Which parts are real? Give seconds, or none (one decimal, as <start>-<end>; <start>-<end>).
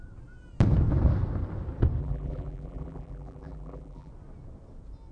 0.0-2.0; 4.1-5.1